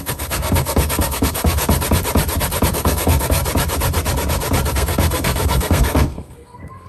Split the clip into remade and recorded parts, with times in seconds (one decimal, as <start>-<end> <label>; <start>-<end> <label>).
0.0-1.6 remade; 1.6-2.7 recorded; 2.7-3.4 remade; 3.4-4.7 recorded; 4.7-6.9 remade